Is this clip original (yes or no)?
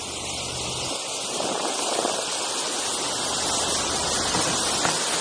yes